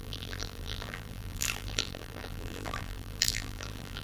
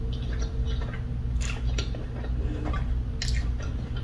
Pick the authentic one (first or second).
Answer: second